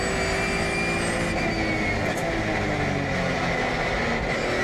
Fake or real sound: real